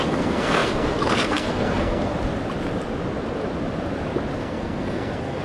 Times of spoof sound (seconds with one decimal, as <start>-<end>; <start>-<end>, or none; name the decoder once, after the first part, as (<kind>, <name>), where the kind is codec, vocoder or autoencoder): 0.0-2.1 (codec, SNAC); 4.4-5.4